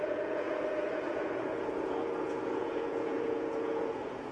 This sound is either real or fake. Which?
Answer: fake